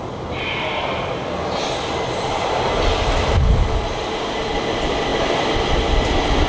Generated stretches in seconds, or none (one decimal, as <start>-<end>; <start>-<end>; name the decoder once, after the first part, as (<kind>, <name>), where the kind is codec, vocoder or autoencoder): none